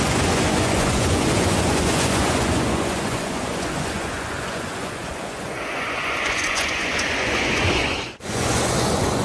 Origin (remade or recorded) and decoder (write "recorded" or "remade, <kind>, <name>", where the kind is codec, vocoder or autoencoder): remade, vocoder, Vocos